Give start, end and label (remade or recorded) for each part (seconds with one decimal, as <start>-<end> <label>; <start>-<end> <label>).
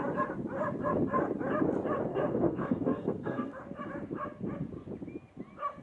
0.0-2.1 recorded; 2.1-3.6 remade; 3.6-5.8 recorded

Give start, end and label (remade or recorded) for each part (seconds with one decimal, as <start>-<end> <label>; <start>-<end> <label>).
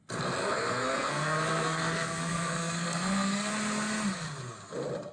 0.0-0.4 recorded; 0.4-3.5 remade; 3.5-5.1 recorded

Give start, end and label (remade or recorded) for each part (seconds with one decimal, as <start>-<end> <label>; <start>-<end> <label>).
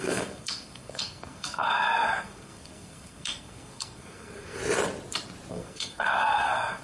0.0-4.6 remade; 4.6-5.5 recorded; 5.5-6.8 remade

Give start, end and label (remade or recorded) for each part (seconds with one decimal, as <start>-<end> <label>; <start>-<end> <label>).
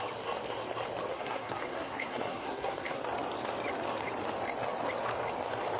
0.0-1.1 recorded; 1.1-3.0 remade; 3.0-5.8 recorded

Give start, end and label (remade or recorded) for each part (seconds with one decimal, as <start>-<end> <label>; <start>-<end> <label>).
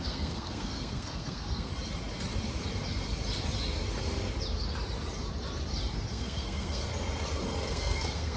0.0-1.7 remade; 1.7-6.1 recorded; 6.1-6.9 remade; 6.9-7.7 recorded; 7.7-8.4 remade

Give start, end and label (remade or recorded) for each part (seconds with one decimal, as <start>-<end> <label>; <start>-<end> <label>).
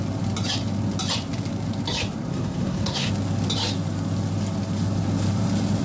0.0-2.3 recorded; 2.3-3.1 remade; 3.1-5.8 recorded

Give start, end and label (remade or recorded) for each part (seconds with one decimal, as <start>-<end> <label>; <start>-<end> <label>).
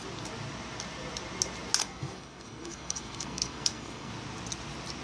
0.0-1.8 recorded; 1.8-4.1 remade; 4.1-5.0 recorded